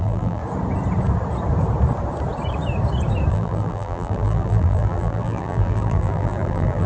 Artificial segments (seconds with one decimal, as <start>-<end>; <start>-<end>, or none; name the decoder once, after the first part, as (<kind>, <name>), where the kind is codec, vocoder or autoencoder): 0.0-0.4 (vocoder, BigVGAN v2); 3.3-6.9